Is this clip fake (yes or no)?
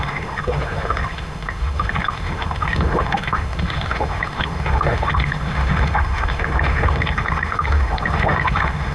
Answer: yes